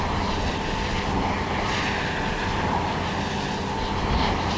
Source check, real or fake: real